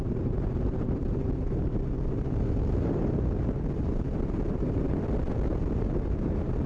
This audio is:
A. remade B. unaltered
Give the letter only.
A